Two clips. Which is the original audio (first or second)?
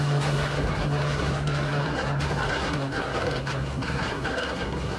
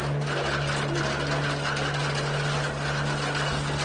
second